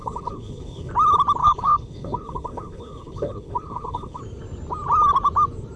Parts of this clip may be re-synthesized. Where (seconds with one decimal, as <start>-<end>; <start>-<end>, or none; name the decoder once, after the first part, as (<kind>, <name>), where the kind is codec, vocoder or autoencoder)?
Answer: 0.0-0.9 (codec, HILCodec); 1.4-4.2